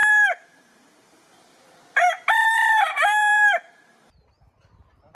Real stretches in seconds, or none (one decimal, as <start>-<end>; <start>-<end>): 1.8-2.4; 4.3-5.1